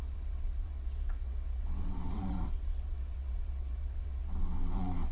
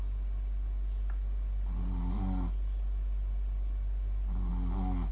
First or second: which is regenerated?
first